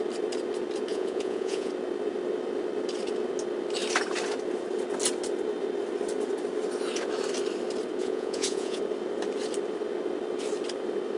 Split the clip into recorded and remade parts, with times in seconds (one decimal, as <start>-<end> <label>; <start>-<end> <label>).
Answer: 0.0-0.9 recorded; 0.9-1.7 remade; 1.7-8.0 recorded; 8.0-8.8 remade; 8.8-11.2 recorded